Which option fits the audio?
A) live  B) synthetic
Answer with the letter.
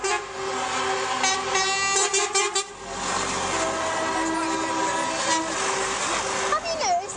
A